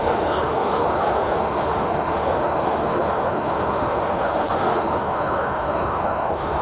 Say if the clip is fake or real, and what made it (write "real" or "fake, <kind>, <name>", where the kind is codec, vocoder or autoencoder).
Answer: fake, autoencoder, DAC-VAE